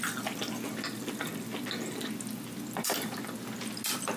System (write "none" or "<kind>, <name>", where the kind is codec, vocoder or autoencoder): none